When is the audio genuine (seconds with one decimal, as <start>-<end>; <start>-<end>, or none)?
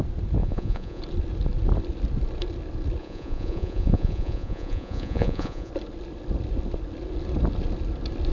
0.0-0.4; 1.0-3.0; 5.7-8.3